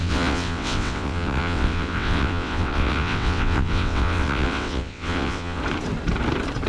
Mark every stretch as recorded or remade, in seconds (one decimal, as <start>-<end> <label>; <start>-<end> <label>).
0.0-5.6 remade; 5.6-6.7 recorded